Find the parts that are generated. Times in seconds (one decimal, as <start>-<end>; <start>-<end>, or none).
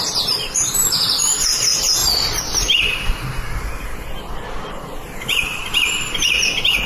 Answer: 0.0-2.0; 2.8-3.4; 4.7-5.6